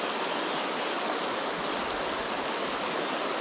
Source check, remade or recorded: recorded